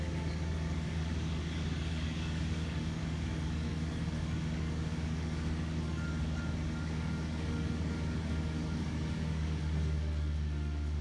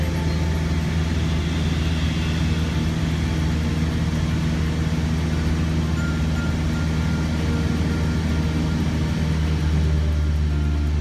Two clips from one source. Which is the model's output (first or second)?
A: first